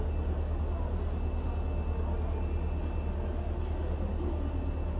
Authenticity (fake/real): real